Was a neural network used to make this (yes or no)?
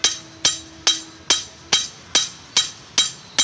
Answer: no